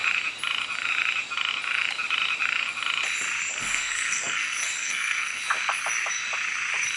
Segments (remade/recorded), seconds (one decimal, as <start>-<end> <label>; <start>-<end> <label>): 0.0-3.6 recorded; 3.6-5.4 remade; 5.4-7.0 recorded

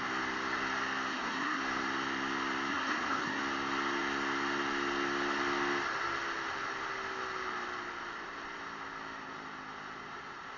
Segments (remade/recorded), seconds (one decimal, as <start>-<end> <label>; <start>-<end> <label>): 0.0-1.1 recorded; 1.1-1.6 remade; 1.6-2.7 recorded; 2.7-3.4 remade; 3.4-10.6 recorded